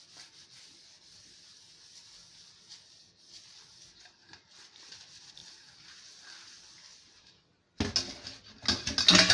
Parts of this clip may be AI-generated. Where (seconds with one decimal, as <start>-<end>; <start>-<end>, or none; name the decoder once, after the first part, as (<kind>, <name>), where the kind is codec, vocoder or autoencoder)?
none